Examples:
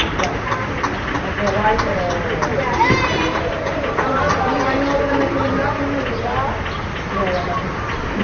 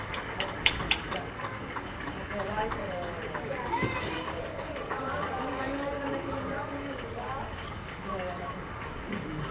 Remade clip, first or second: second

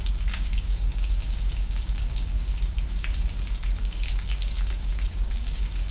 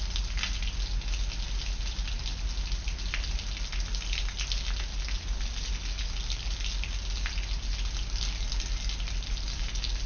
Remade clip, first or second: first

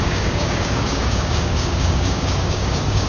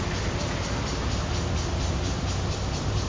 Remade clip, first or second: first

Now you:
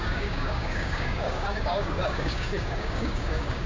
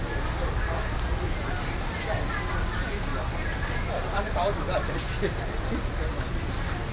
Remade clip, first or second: first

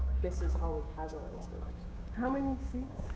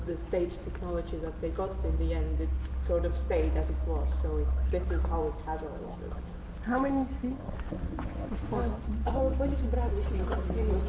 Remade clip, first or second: first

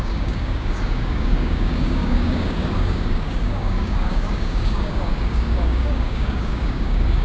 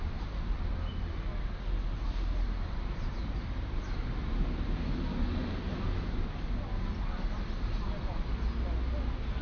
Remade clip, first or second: first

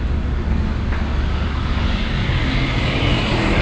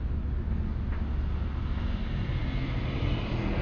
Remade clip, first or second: first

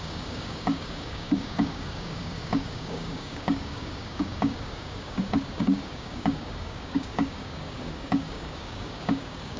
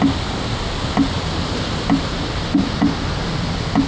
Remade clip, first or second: first